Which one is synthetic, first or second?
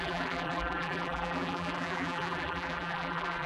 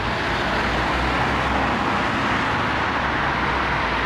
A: first